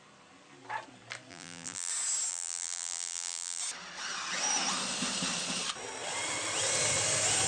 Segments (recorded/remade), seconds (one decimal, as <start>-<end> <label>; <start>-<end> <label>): 0.0-1.3 recorded; 1.3-1.9 remade; 1.9-2.3 recorded; 2.3-3.6 remade; 3.6-7.5 recorded